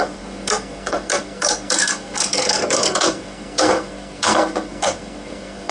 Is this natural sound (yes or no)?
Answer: no